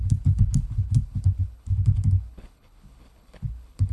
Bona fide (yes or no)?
no